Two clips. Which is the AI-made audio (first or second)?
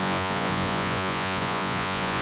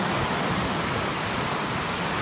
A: first